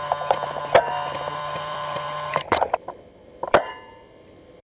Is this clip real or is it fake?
fake